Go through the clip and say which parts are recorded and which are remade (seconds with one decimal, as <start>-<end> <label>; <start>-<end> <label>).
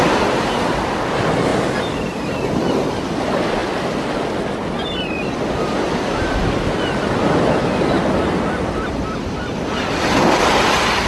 0.0-11.1 recorded